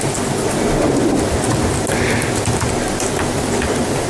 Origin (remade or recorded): recorded